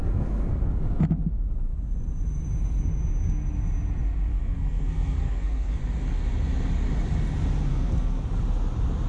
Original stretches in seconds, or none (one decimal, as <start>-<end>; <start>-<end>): 0.7-4.3; 5.8-7.7; 8.2-9.1